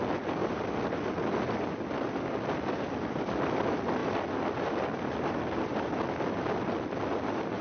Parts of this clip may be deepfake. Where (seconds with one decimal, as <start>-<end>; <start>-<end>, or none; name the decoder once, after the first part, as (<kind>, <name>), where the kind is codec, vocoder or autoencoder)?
4.0-7.0 (vocoder, BigVGAN v2)